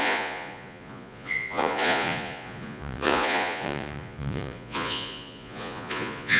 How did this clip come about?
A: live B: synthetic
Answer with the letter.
B